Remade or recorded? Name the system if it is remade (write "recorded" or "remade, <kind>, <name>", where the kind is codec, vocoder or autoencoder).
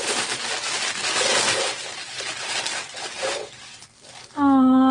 recorded